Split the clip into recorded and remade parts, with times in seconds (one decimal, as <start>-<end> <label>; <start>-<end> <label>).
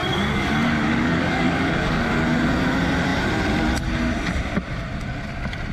0.0-2.1 remade; 2.1-5.7 recorded